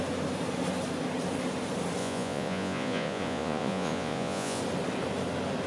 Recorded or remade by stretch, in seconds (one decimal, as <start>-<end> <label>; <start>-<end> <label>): 0.0-2.0 recorded; 2.0-4.6 remade; 4.6-5.7 recorded